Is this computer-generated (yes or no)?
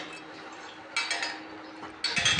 no